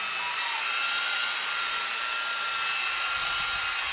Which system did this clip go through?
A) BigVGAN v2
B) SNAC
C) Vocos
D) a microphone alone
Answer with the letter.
D